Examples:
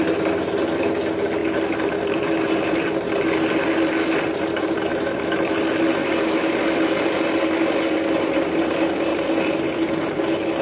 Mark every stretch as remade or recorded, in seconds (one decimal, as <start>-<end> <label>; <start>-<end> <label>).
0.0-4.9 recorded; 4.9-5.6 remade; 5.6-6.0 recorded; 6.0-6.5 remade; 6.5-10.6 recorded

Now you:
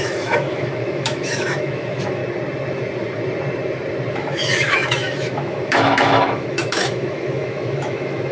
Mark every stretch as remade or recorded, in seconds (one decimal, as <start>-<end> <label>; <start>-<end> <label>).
0.0-2.2 remade; 2.2-4.1 recorded; 4.1-8.3 remade

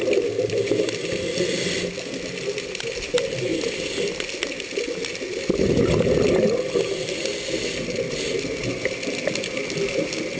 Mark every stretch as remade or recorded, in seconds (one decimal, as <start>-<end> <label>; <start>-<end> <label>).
0.0-3.5 remade; 3.5-6.5 recorded; 6.5-10.4 remade

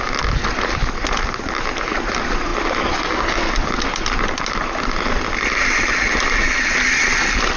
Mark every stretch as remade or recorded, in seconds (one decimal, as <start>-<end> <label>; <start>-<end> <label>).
0.0-7.6 recorded

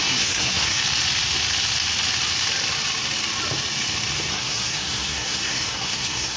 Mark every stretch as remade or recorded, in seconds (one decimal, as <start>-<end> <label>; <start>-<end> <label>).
0.0-0.8 remade; 0.8-4.3 recorded; 4.3-6.4 remade